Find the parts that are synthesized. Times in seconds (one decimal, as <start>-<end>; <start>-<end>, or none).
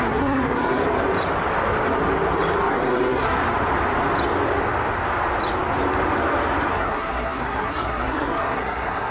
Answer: 0.0-0.8; 2.7-3.4; 6.7-9.1